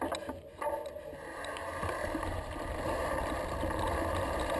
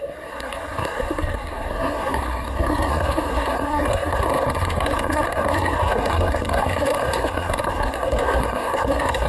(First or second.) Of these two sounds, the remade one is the second